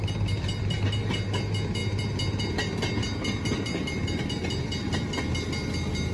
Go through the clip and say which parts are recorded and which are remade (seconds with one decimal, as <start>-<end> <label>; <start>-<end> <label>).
0.0-6.1 recorded